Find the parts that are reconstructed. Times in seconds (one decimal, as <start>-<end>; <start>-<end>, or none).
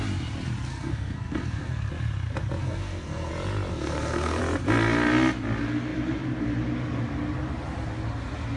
0.7-1.9; 2.6-3.3; 3.7-4.4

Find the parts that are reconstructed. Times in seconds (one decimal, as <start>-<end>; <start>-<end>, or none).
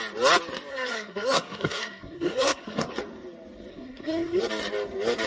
0.7-2.9; 3.7-4.4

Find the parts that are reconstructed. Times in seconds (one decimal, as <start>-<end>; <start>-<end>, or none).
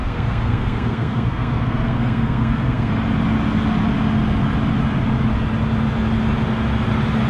0.0-2.9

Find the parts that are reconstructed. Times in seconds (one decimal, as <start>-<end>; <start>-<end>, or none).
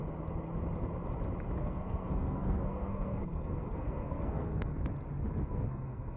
1.6-4.8; 5.5-6.2